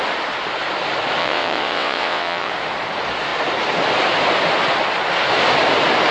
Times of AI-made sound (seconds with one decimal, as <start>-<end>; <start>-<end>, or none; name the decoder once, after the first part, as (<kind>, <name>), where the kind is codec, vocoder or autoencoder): 1.2-2.5 (vocoder, WaveNeXt)